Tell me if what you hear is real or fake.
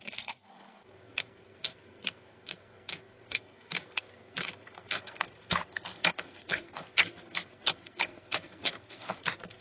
fake